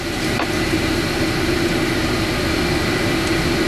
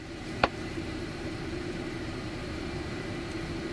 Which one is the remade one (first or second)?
second